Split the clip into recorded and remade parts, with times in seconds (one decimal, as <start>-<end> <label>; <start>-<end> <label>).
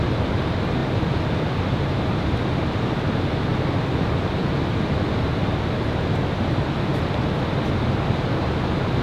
0.0-0.8 recorded; 0.8-2.0 remade; 2.0-9.0 recorded